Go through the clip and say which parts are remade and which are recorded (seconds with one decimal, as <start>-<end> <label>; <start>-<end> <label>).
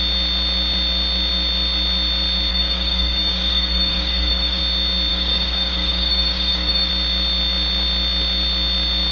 0.0-2.5 recorded; 2.5-4.6 remade; 4.6-5.1 recorded; 5.1-6.9 remade; 6.9-9.1 recorded